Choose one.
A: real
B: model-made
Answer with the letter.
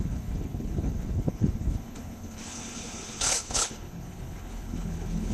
B